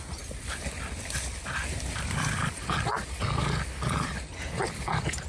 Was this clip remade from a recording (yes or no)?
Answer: no